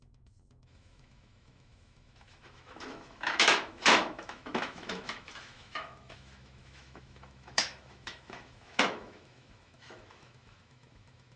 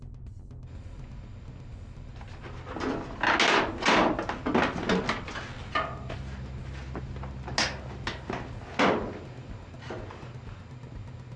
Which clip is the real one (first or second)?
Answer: second